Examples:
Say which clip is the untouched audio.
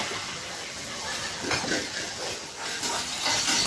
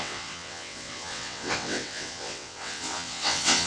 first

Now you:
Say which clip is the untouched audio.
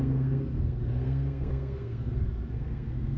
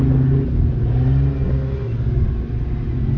second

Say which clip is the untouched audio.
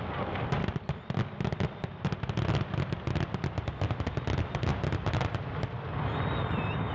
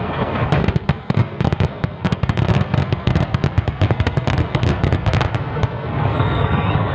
first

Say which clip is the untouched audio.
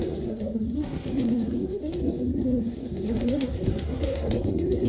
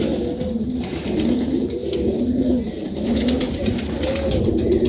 second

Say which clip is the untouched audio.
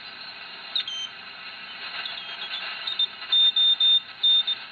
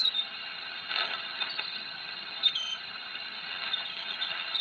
first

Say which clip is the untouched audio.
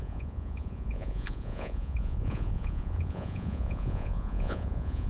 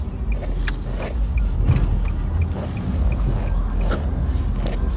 second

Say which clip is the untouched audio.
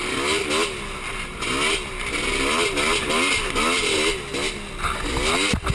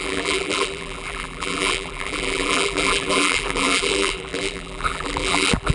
first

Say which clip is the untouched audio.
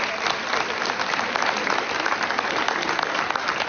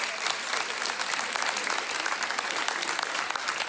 first